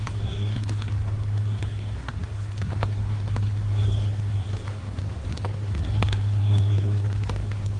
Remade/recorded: remade